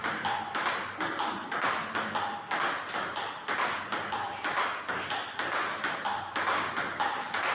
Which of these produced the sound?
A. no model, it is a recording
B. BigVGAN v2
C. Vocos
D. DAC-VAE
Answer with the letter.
A